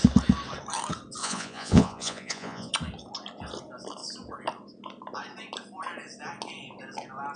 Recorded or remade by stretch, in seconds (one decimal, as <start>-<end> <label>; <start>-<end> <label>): 0.0-1.2 recorded; 1.2-2.7 remade; 2.7-7.4 recorded